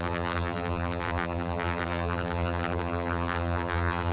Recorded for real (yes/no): no